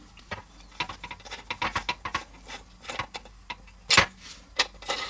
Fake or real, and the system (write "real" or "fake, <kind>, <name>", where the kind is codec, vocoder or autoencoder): real